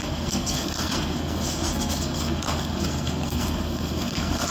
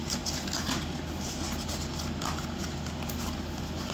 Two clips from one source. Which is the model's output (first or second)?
first